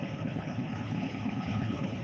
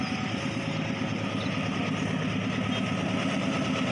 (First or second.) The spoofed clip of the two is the first